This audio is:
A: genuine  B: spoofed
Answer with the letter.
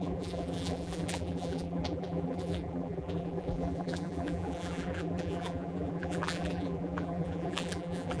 B